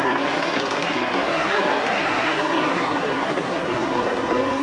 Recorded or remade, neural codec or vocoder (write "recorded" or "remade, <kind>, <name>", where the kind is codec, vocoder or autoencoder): remade, codec, SNAC